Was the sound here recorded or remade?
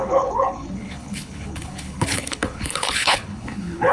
remade